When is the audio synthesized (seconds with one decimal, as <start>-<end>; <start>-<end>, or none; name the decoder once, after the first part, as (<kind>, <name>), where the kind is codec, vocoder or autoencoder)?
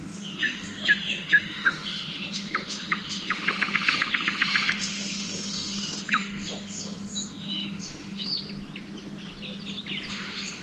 0.0-8.3 (autoencoder, DAC-VAE); 10.1-10.6